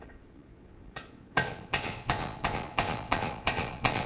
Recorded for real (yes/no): no